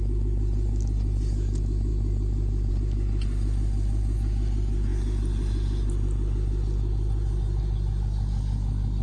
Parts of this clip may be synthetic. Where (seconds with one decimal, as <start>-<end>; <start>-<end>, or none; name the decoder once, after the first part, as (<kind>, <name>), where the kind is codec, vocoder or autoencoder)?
none

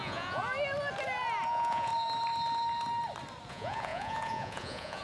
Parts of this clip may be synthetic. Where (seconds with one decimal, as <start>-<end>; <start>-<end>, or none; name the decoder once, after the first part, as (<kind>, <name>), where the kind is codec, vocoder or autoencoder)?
0.0-0.4 (vocoder, Vocos); 1.5-1.9; 3.5-5.0

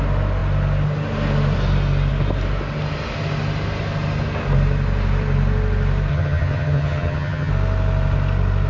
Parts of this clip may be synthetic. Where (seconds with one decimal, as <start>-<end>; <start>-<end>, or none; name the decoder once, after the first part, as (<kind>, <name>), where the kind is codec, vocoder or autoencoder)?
6.1-7.5 (vocoder, HiFi-GAN)

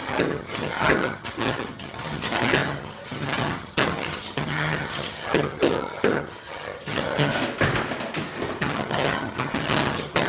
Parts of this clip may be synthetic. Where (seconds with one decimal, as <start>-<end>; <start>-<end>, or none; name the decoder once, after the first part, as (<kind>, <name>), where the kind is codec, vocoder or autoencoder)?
0.0-7.3 (vocoder, HiFi-GAN); 8.6-10.3

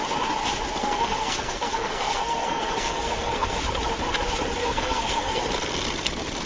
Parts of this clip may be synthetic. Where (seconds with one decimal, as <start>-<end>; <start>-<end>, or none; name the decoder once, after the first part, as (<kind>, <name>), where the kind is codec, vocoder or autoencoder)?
0.8-3.6 (codec, SNAC); 4.6-5.4

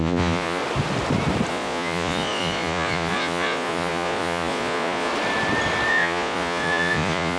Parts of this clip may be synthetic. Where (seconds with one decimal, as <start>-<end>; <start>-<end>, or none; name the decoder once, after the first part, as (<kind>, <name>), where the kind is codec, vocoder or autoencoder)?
0.0-0.6 (vocoder, Vocos); 1.5-5.1; 5.9-7.4